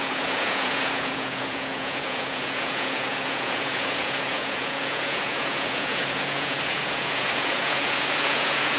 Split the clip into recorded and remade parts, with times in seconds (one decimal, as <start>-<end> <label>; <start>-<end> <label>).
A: 0.0-8.8 remade